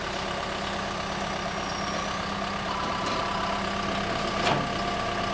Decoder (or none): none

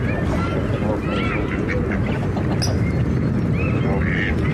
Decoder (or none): none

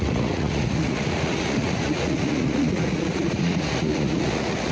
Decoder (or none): vocoder, Vocos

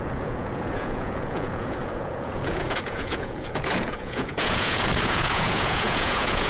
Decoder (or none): vocoder, Vocos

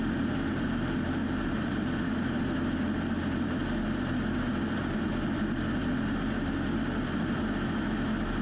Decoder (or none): none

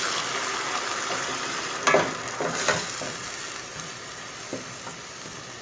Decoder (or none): none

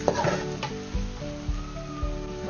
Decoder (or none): none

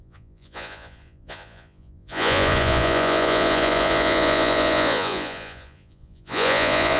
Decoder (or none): vocoder, Vocos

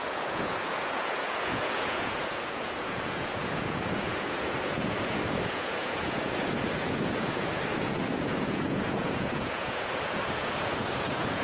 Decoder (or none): vocoder, Vocos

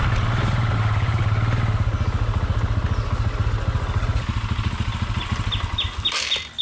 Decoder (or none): none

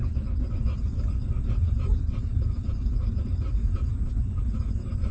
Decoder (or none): none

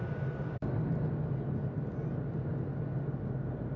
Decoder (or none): none